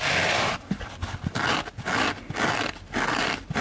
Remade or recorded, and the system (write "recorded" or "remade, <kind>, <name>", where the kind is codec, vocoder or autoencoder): recorded